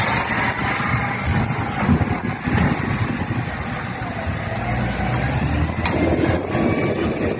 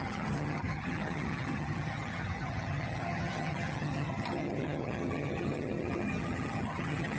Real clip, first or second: first